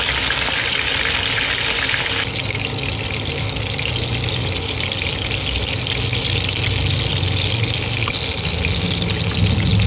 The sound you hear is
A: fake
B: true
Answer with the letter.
B